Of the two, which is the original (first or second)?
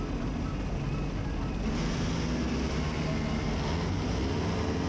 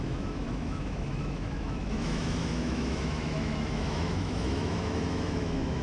first